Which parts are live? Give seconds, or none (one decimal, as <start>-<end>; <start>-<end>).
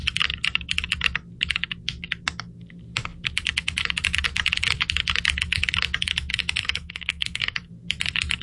0.0-6.6; 7.7-8.4